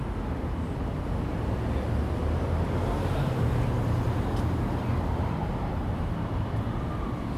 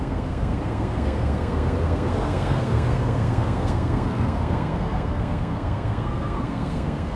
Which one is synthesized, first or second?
second